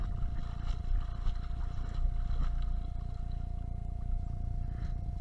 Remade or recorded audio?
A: recorded